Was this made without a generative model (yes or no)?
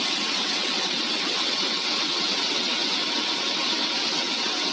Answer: no